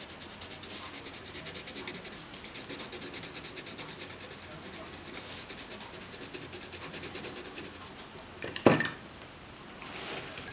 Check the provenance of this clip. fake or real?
real